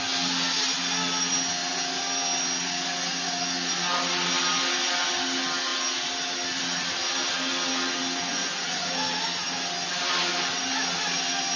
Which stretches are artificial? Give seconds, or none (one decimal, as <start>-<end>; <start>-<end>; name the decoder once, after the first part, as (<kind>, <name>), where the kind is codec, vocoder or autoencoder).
8.3-8.9 (vocoder, Vocos)